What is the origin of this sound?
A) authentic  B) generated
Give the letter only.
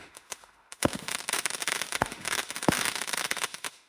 B